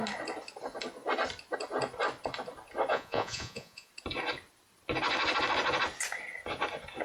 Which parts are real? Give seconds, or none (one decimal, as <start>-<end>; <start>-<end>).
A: 0.0-2.9; 3.9-7.0